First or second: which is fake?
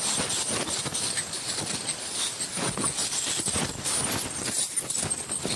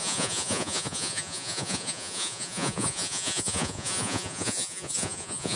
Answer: second